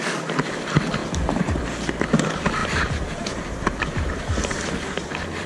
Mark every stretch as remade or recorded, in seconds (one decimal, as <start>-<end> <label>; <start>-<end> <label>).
0.0-1.0 recorded; 1.0-1.6 remade; 1.6-2.6 recorded; 2.6-4.1 remade; 4.1-5.5 recorded